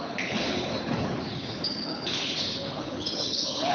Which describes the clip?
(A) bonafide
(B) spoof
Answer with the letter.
B